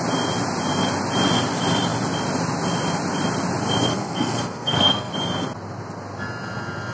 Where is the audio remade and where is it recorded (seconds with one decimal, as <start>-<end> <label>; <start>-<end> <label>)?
0.0-3.9 recorded; 3.9-5.1 remade; 5.1-6.9 recorded